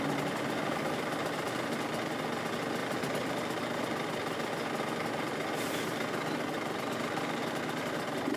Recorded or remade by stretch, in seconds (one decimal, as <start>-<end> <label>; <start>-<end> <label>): 0.0-8.4 recorded